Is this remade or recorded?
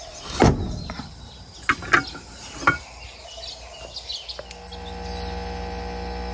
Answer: recorded